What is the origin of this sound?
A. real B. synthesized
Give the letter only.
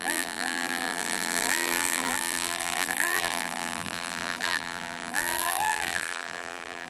B